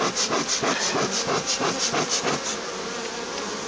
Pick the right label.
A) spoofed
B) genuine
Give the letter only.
B